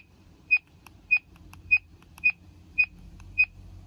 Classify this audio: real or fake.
fake